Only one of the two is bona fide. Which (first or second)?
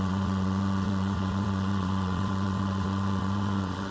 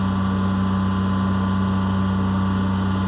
second